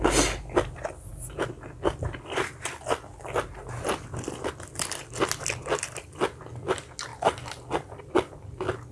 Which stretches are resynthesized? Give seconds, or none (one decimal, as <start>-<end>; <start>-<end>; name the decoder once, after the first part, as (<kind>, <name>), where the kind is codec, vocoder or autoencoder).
none